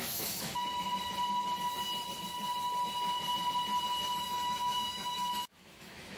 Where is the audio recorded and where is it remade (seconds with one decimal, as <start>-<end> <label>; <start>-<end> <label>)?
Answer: 0.0-0.5 remade; 0.5-4.2 recorded; 4.2-6.2 remade